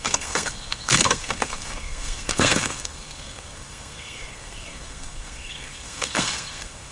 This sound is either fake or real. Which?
fake